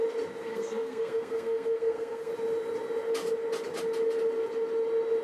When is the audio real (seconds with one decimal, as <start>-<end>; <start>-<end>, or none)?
0.0-0.5; 2.3-5.2